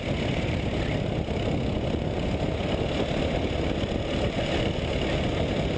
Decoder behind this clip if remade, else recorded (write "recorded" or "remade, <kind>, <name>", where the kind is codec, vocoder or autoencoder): recorded